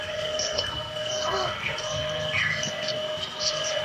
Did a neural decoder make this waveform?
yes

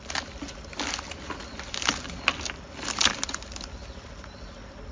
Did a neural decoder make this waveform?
no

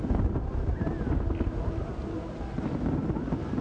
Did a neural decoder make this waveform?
no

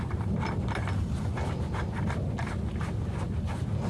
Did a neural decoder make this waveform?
no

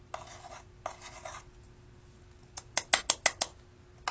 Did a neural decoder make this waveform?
no